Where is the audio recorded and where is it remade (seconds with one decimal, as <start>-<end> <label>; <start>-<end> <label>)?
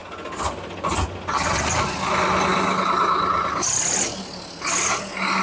0.0-5.4 recorded